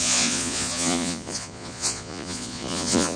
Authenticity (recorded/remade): remade